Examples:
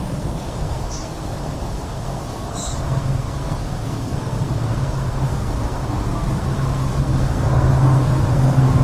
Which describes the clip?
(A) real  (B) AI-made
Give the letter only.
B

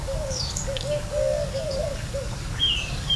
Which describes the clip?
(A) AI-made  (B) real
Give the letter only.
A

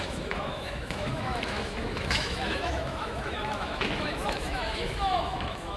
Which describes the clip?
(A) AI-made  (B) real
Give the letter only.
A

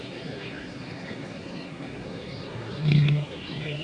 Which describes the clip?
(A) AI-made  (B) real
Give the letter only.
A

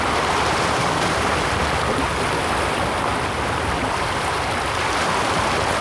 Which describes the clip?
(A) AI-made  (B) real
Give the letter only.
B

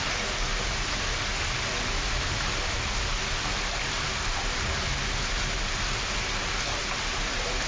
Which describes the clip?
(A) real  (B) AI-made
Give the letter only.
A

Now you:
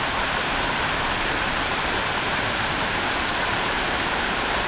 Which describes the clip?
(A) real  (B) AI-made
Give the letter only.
B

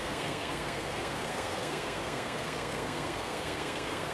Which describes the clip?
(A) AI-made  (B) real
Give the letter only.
A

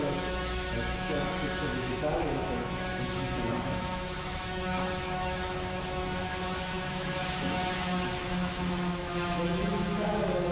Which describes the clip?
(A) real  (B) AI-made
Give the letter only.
B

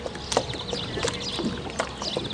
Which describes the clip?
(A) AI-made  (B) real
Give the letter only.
B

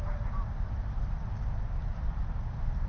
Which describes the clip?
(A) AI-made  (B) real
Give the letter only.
B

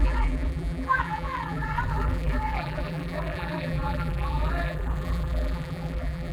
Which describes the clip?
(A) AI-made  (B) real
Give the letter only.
A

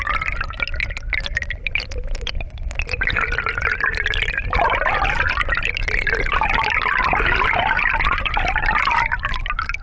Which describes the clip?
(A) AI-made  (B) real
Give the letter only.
B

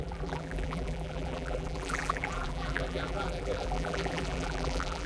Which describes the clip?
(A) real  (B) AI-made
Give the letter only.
B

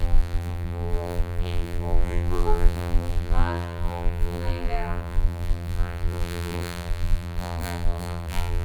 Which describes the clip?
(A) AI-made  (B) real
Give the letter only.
A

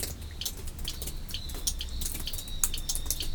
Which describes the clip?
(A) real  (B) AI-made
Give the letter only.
A